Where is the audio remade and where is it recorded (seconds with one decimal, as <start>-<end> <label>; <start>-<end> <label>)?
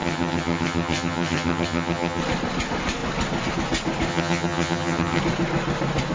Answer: 0.0-2.2 remade; 2.2-4.1 recorded; 4.1-5.2 remade; 5.2-6.1 recorded